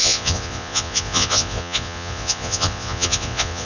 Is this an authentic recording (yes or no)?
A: no